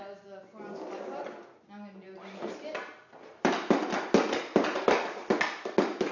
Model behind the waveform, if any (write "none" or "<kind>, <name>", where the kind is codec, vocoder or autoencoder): none